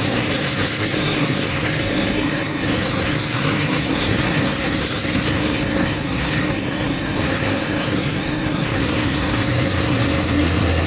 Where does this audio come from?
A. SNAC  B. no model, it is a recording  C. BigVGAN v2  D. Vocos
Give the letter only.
A